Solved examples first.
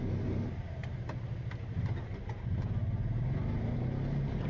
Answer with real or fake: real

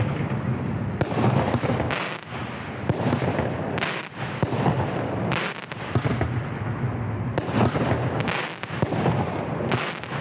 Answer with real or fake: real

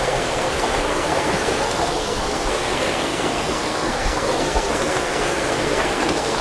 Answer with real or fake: fake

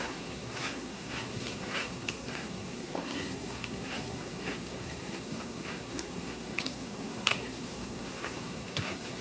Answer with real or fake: fake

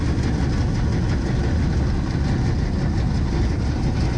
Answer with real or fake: real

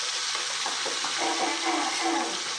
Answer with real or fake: real